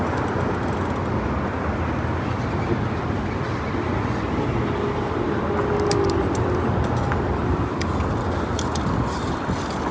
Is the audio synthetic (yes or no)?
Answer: no